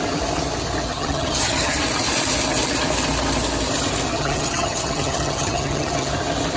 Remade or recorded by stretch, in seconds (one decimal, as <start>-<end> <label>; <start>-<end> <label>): 0.0-0.9 recorded; 0.9-1.8 remade; 1.8-4.1 recorded; 4.1-6.1 remade; 6.1-6.6 recorded